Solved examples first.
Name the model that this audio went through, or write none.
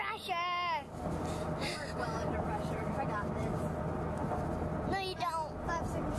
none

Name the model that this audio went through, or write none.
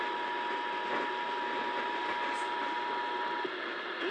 none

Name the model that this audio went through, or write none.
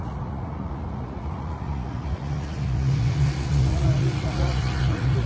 vocoder, Vocos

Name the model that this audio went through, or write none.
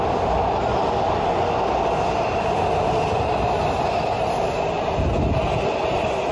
none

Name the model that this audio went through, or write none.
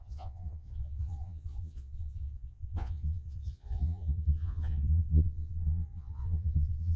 vocoder, Vocos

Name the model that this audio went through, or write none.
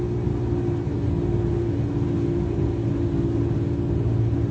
none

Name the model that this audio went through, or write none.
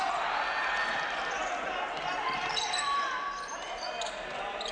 none